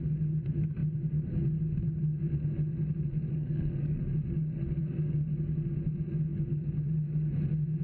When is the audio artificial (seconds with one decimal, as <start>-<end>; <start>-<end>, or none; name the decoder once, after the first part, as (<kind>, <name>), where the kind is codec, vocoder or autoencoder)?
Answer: 3.3-4.0 (codec, SNAC)